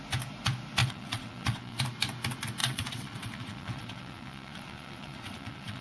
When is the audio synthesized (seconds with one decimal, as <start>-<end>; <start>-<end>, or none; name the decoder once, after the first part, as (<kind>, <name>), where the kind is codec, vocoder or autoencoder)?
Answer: 0.8-1.8 (vocoder, WaveNeXt); 2.6-5.8